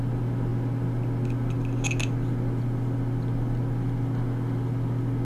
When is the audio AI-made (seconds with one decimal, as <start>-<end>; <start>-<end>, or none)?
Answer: none